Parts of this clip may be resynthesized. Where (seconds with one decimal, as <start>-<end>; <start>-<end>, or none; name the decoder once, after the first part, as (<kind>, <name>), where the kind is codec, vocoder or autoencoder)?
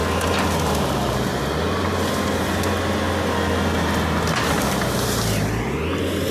none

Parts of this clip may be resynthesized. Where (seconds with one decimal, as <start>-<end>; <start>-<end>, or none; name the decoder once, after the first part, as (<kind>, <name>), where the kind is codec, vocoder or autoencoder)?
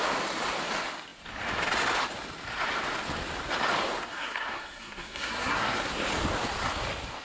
4.0-5.9 (codec, SNAC)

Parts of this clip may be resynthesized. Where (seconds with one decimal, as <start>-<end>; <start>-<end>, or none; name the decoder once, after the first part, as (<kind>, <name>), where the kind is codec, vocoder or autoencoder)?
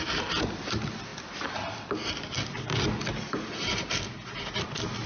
none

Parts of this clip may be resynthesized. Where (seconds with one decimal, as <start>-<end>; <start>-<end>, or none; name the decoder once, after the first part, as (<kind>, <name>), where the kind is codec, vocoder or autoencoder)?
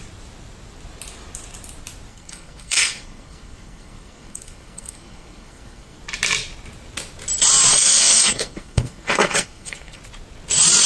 2.1-6.0 (codec, SNAC); 7.7-10.0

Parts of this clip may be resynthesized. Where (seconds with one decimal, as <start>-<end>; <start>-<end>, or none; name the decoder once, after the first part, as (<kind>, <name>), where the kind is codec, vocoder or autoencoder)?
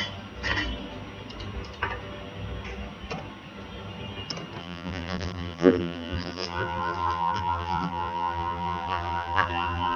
4.6-10.0 (vocoder, BigVGAN v2)